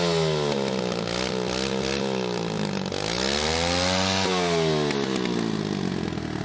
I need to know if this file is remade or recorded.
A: recorded